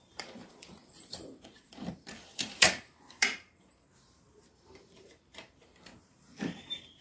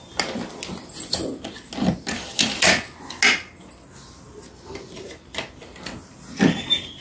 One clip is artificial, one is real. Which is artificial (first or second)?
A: first